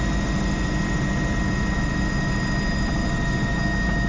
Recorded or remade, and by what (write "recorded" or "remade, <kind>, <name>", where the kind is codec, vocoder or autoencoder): recorded